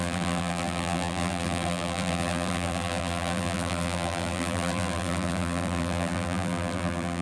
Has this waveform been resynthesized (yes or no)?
yes